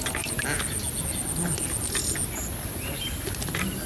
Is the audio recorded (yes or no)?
yes